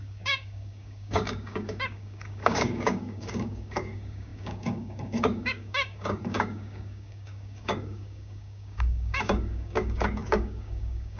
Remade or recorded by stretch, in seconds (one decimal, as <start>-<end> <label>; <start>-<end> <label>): 0.0-11.2 remade